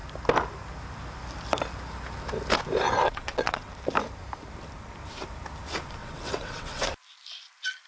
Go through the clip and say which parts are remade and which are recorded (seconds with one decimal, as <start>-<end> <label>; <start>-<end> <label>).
0.0-3.0 recorded; 3.0-3.7 remade; 3.7-6.0 recorded; 6.0-6.9 remade; 6.9-7.9 recorded